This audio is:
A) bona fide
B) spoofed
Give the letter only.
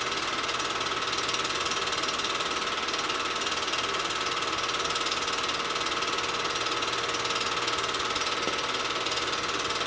A